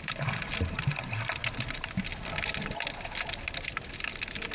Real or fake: real